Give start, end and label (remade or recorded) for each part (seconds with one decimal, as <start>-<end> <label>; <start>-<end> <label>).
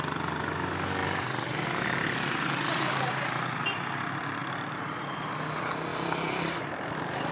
0.0-1.0 recorded; 1.0-3.1 remade; 3.1-4.4 recorded; 4.4-5.3 remade; 5.3-5.9 recorded; 5.9-7.3 remade